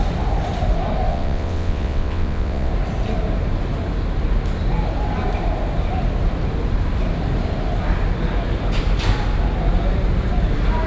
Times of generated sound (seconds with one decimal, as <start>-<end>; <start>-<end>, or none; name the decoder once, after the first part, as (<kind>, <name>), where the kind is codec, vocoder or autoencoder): 1.1-2.7 (vocoder, WaveNeXt)